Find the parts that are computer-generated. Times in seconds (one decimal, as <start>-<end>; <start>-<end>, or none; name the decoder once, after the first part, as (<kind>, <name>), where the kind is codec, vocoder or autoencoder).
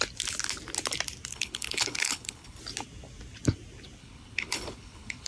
1.3-2.6 (codec, HILCodec); 4.0-5.3